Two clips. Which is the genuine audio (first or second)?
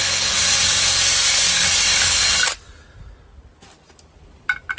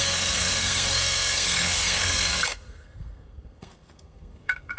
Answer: first